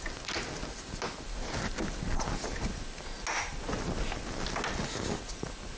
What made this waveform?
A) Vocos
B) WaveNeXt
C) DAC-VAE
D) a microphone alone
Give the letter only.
D